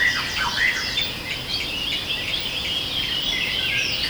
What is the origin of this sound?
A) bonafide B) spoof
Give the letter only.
A